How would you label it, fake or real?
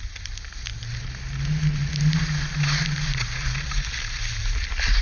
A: real